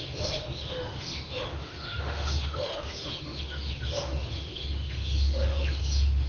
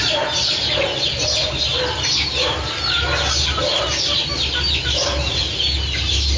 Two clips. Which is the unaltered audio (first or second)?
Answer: second